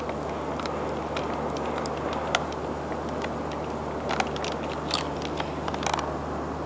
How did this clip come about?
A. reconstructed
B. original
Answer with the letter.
B